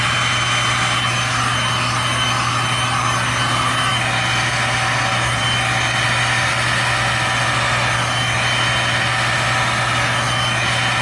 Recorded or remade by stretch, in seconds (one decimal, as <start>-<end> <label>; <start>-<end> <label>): 0.0-11.0 recorded